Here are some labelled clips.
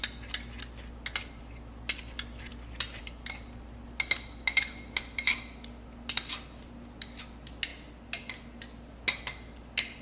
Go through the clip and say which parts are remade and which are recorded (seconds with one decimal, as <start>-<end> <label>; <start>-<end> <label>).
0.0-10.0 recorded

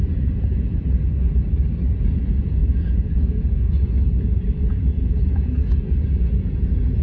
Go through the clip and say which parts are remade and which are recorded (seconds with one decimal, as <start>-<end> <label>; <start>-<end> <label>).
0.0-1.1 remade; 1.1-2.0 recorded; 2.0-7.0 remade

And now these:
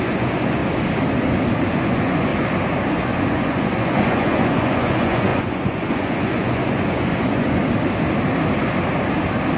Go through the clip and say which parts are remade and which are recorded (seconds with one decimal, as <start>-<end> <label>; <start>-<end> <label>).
0.0-0.6 remade; 0.6-1.7 recorded; 1.7-2.3 remade; 2.3-2.9 recorded; 2.9-7.6 remade; 7.6-9.6 recorded